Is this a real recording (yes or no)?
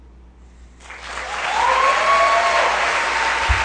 yes